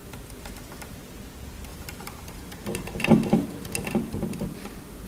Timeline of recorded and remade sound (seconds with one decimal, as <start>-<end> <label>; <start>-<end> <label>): 0.0-1.7 recorded; 1.7-5.1 remade